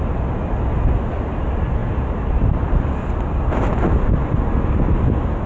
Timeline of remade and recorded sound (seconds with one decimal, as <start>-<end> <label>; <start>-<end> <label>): 0.0-5.5 recorded